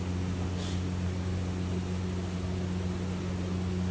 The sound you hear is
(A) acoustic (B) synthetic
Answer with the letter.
A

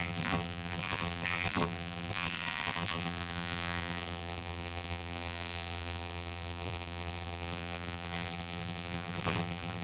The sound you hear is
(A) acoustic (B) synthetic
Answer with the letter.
B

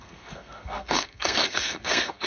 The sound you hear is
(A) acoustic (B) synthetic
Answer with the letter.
B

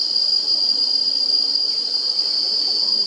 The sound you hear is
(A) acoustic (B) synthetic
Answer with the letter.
A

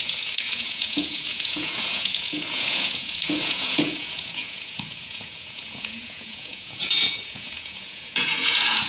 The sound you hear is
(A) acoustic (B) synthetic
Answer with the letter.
B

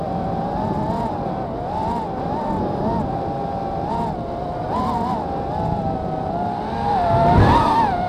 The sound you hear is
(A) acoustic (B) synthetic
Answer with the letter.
A